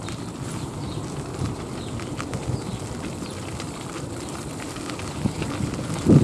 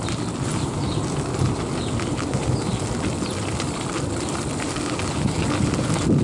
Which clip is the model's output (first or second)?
first